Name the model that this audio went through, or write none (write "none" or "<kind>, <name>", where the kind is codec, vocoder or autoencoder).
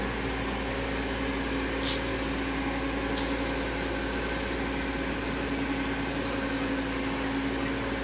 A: none